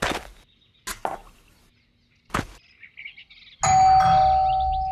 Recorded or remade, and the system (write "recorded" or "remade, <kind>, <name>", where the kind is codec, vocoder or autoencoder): recorded